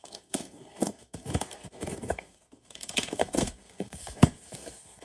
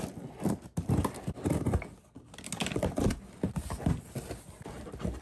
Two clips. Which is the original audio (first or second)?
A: second